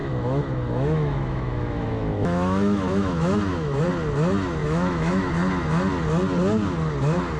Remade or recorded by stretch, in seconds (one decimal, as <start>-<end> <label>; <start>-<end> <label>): 0.0-3.8 remade; 3.8-4.6 recorded; 4.6-5.3 remade; 5.3-7.4 recorded

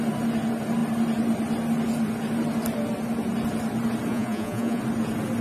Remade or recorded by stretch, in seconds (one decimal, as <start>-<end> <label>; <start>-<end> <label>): 0.0-4.1 recorded; 4.1-4.8 remade; 4.8-5.4 recorded